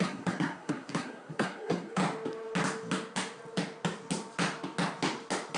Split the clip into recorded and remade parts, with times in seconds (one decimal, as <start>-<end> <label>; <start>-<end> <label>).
0.0-2.0 remade; 2.0-5.6 recorded